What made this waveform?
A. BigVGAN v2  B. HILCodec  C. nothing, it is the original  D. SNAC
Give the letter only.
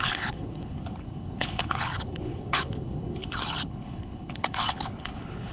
B